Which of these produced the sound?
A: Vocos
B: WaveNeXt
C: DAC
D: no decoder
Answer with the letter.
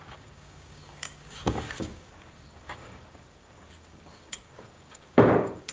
C